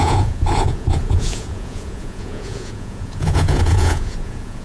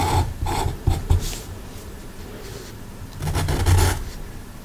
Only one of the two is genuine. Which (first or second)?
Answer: second